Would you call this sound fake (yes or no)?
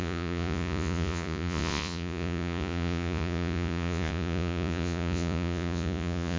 yes